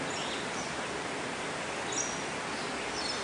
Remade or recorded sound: recorded